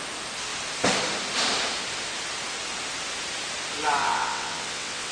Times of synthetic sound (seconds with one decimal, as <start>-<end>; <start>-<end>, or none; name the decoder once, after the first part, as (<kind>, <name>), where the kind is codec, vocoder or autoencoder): 4.0-5.1 (vocoder, WaveNeXt)